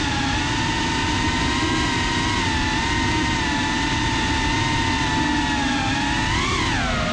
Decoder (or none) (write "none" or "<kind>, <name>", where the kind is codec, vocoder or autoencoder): none